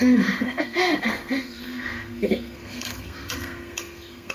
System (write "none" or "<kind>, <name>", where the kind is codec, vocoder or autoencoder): codec, SNAC